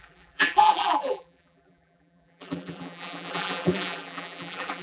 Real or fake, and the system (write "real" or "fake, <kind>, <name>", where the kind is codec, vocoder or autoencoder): fake, vocoder, BigVGAN v2